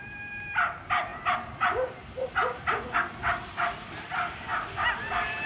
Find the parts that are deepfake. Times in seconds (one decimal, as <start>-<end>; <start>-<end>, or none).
none